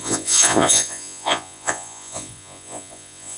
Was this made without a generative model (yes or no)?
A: no